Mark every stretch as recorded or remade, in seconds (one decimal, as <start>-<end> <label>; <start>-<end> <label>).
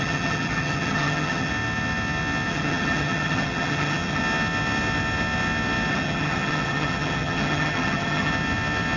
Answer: 0.0-1.5 remade; 1.5-2.5 recorded; 2.5-4.2 remade; 4.2-5.9 recorded; 5.9-8.3 remade; 8.3-9.0 recorded